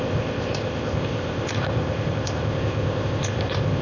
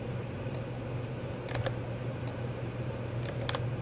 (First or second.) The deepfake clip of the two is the first